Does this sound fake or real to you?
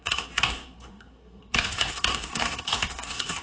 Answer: fake